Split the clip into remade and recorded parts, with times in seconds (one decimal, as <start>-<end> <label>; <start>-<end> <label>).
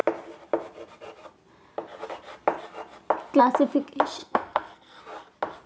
0.0-4.2 recorded; 4.2-5.0 remade; 5.0-5.7 recorded